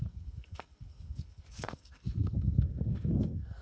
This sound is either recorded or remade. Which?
remade